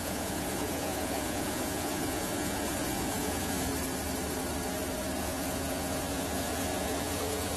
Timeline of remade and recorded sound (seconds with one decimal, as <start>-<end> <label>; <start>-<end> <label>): 0.0-3.7 remade; 3.7-5.2 recorded; 5.2-7.6 remade